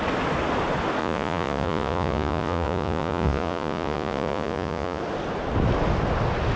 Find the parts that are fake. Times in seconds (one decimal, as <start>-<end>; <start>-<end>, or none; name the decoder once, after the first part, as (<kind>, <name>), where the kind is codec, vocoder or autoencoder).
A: 1.0-5.0 (vocoder, Vocos)